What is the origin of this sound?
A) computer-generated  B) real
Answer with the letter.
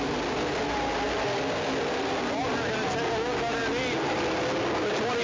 B